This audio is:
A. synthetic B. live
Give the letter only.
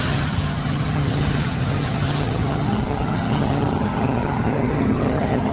A